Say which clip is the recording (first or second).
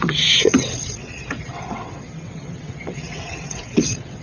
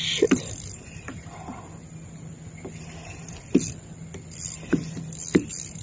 second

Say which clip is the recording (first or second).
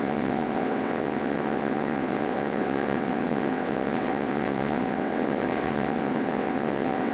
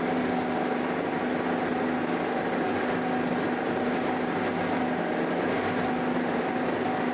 second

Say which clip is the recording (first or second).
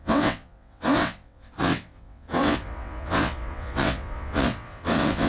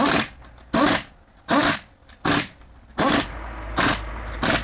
second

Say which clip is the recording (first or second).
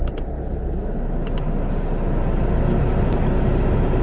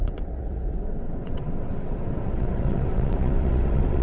first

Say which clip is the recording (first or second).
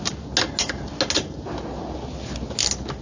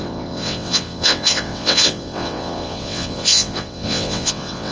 first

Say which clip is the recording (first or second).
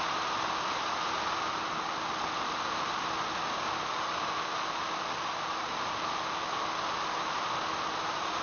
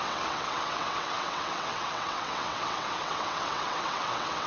first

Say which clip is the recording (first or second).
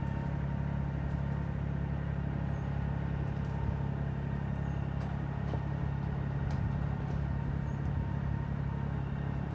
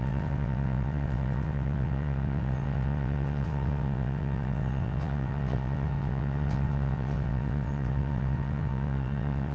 first